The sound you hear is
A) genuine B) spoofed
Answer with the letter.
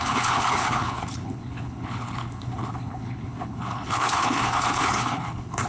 B